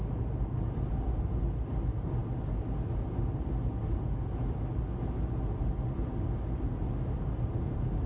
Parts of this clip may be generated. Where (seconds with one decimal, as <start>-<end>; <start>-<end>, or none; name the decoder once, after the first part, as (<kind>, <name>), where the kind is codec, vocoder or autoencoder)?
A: none